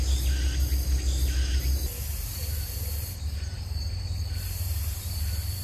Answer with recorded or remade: recorded